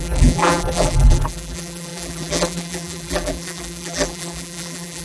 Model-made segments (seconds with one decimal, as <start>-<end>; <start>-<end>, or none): 0.0-5.0